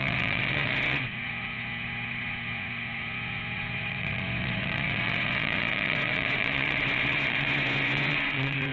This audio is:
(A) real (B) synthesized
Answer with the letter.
B